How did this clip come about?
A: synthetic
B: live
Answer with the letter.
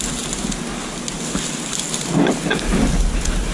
B